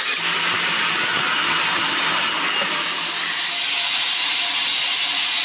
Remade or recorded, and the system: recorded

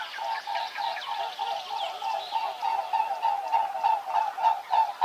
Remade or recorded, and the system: recorded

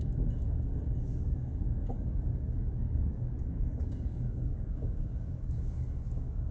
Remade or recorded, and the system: remade, codec, DAC